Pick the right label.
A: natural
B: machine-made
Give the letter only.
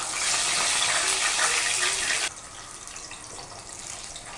A